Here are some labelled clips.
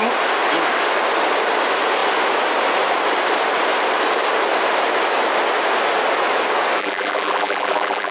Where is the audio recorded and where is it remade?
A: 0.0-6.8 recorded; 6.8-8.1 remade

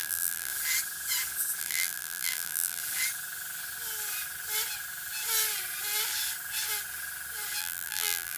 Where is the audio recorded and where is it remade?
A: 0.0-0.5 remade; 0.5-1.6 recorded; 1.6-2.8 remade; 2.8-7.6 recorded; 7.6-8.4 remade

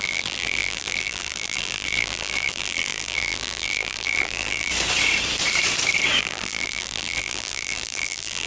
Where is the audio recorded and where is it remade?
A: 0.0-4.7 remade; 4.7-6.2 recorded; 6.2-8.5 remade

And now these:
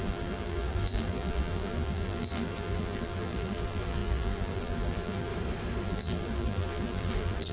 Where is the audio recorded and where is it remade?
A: 0.0-5.3 remade; 5.3-5.8 recorded; 5.8-7.5 remade